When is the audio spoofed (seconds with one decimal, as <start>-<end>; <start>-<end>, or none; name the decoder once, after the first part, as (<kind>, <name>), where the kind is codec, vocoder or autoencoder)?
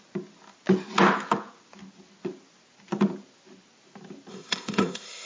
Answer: 4.3-5.3 (codec, ZipCodec)